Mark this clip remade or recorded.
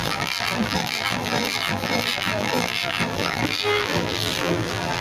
remade